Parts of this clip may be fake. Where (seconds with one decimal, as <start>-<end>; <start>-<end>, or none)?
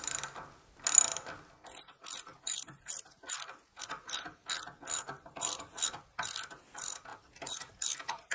none